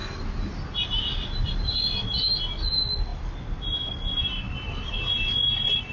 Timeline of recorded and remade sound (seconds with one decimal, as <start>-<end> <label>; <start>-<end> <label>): 0.0-5.9 recorded